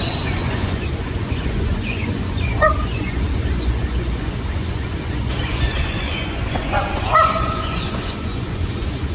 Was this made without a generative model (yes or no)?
no